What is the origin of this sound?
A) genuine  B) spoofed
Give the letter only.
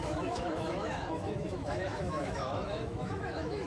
B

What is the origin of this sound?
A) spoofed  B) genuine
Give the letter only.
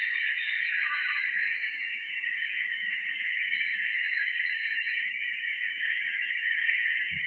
A